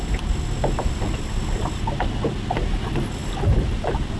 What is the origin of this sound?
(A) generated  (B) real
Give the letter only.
B